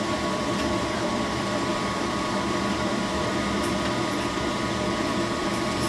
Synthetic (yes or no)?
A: yes